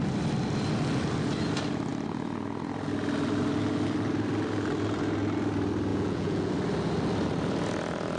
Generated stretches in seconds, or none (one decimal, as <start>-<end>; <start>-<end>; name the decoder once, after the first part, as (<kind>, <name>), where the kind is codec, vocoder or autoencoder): 5.9-6.5 (vocoder, Vocos)